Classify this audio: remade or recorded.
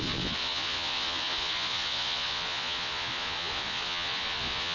remade